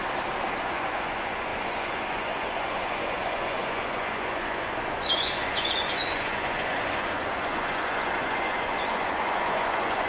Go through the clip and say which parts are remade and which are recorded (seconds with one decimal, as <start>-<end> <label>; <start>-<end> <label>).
0.0-0.6 recorded; 0.6-10.1 remade